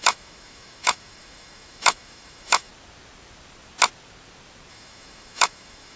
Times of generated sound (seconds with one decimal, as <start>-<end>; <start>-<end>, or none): 0.0-2.7; 4.7-6.0

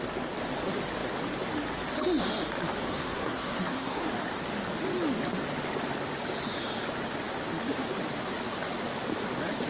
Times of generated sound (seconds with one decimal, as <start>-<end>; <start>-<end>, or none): 2.9-4.0

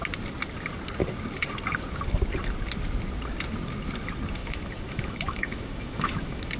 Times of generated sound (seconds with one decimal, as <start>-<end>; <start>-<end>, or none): 4.4-6.6

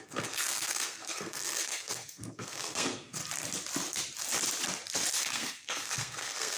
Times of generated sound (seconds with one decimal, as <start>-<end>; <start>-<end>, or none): 0.0-3.2; 5.2-6.6

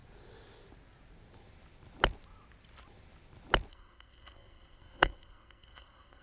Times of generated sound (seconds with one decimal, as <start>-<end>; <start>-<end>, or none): 3.7-6.2

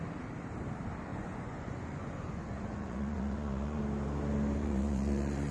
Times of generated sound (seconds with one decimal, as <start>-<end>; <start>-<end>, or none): 1.1-3.8; 4.6-5.5